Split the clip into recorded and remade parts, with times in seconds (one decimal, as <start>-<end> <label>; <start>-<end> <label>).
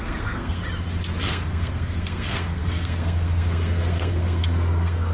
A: 0.0-0.6 remade; 0.6-1.3 recorded; 1.3-5.1 remade